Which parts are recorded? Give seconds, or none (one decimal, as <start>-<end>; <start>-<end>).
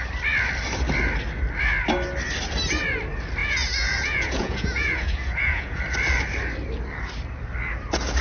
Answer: 0.0-3.4; 5.8-8.2